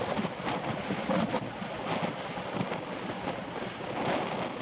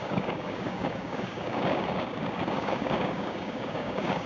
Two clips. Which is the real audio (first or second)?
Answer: first